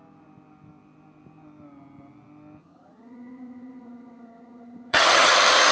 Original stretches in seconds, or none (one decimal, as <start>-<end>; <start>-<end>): 0.0-2.6; 5.3-5.7